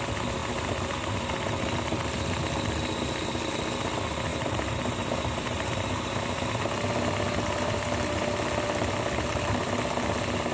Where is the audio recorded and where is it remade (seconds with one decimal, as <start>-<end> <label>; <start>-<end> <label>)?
0.0-4.3 recorded; 4.3-6.6 remade; 6.6-10.5 recorded

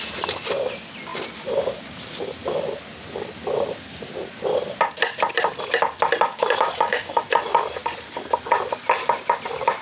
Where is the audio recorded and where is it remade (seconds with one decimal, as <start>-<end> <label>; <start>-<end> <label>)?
0.0-6.3 recorded; 6.3-7.2 remade; 7.2-9.8 recorded

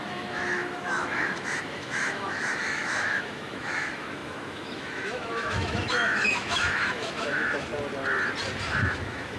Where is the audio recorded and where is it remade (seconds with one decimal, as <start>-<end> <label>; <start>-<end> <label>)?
0.0-7.7 remade; 7.7-8.8 recorded; 8.8-9.4 remade

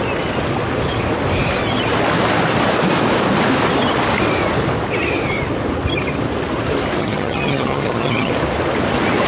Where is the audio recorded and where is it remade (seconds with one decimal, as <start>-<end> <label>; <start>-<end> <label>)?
0.0-7.0 recorded; 7.0-8.3 remade; 8.3-9.3 recorded

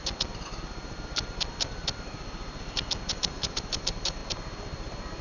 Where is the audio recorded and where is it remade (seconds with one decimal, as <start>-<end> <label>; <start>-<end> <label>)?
0.0-3.1 recorded; 3.1-4.2 remade; 4.2-5.2 recorded

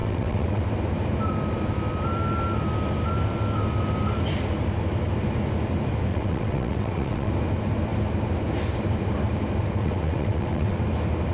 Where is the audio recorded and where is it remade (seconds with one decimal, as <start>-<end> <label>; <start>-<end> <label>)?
0.0-0.6 remade; 0.6-6.1 recorded; 6.1-7.3 remade; 7.3-9.8 recorded; 9.8-10.8 remade; 10.8-11.3 recorded

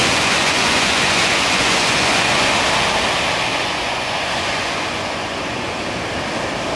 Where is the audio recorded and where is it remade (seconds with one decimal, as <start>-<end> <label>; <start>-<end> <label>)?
0.0-2.5 remade; 2.5-3.5 recorded; 3.5-5.8 remade; 5.8-6.8 recorded